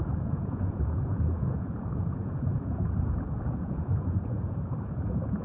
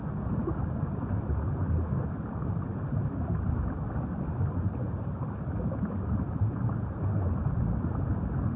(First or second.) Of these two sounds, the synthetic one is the first